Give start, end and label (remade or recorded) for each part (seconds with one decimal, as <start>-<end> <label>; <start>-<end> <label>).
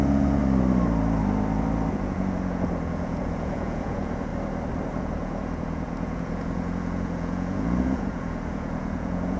0.0-0.4 remade; 0.4-1.9 recorded; 1.9-4.3 remade; 4.3-5.0 recorded; 5.0-9.4 remade